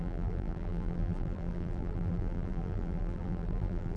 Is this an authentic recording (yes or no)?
no